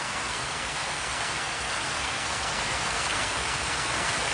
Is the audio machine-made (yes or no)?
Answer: yes